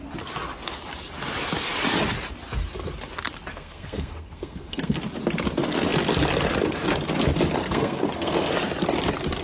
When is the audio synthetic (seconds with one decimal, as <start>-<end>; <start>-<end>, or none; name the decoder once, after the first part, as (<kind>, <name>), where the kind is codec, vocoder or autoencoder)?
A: 3.5-5.0 (codec, SNAC); 7.6-8.5